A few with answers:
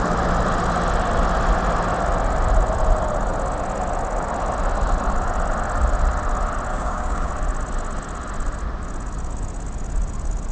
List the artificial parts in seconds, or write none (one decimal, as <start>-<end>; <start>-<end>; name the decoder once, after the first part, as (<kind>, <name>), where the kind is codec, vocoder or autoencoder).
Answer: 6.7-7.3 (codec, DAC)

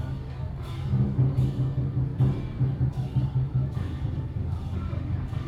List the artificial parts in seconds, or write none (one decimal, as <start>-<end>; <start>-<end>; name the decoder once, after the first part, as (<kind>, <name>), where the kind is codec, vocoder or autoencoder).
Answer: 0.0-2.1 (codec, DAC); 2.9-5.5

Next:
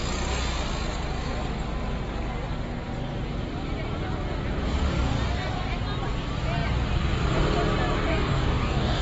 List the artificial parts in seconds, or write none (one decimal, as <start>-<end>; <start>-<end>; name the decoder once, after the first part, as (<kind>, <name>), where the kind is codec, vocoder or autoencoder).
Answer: 8.1-9.0 (codec, DAC)

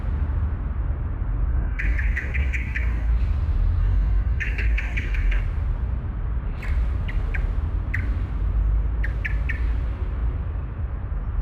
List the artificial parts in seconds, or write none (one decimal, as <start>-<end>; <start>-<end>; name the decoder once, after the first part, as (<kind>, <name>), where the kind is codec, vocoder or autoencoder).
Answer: 1.5-3.1 (codec, DAC); 3.8-5.4

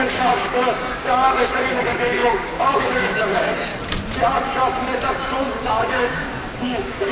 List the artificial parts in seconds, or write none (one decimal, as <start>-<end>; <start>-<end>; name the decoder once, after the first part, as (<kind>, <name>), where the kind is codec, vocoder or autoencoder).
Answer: 0.0-3.7 (codec, DAC); 5.5-7.1